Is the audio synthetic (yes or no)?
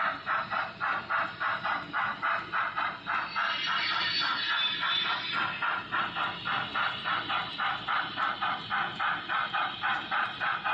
no